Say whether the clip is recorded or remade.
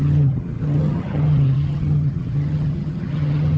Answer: remade